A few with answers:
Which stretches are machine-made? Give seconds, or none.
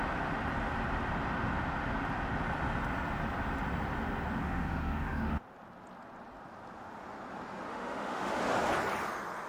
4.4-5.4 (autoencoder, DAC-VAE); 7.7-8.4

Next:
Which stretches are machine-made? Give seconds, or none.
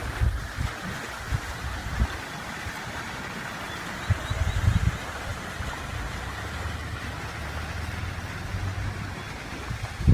1.8-3.2 (vocoder, BigVGAN v2); 5.3-6.3; 8.7-9.7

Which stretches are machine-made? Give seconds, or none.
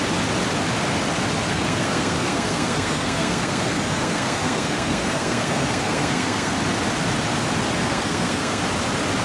1.5-6.5 (codec, SNAC); 7.8-8.6